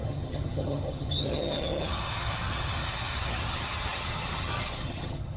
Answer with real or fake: fake